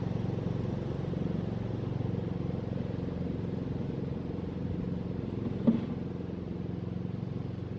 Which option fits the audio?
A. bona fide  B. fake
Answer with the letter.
A